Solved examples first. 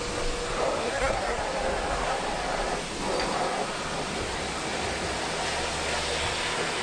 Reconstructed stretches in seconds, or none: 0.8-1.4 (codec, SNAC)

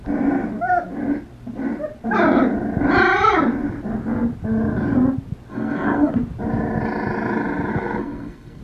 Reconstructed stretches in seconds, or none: 5.5-6.1 (codec, SNAC); 7.7-8.6

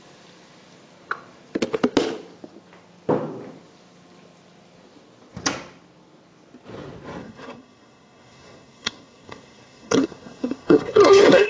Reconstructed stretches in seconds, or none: 7.2-11.5 (codec, SNAC)

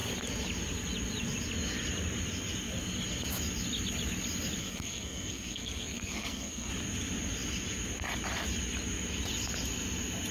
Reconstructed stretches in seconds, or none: 4.6-6.7 (codec, SNAC)

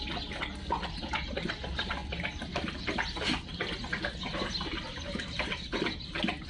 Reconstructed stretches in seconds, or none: none